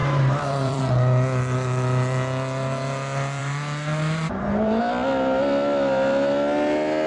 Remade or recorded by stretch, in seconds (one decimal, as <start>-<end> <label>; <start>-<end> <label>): 0.0-0.8 remade; 0.8-3.4 recorded; 3.4-4.8 remade; 4.8-7.1 recorded